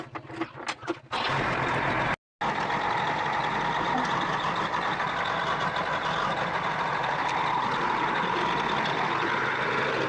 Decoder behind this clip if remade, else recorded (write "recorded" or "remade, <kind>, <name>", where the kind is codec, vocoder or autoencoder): recorded